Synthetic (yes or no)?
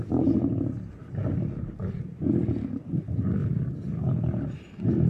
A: no